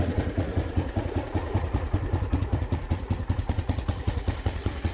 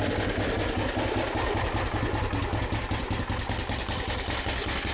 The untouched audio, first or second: second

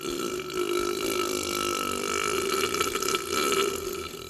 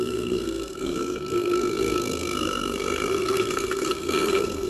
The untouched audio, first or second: first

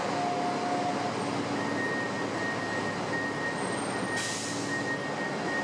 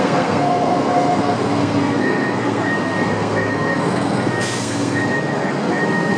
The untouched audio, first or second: first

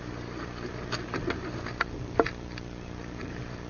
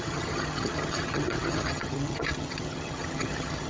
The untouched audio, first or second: first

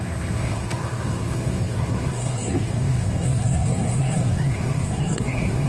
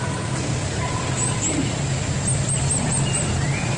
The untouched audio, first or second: second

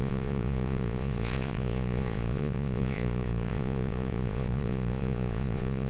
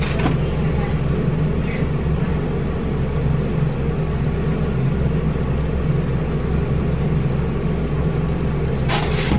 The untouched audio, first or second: second